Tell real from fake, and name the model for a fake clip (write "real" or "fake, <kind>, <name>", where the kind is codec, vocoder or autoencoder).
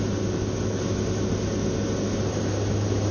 real